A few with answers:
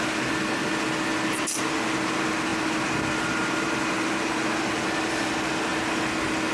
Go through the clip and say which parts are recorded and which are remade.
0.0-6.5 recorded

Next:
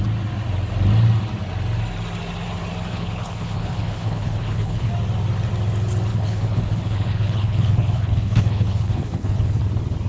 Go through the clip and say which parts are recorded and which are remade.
0.0-2.9 recorded; 2.9-4.9 remade; 4.9-6.1 recorded; 6.1-9.6 remade; 9.6-10.1 recorded